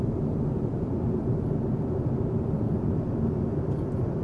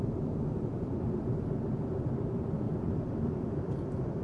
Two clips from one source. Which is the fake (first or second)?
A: second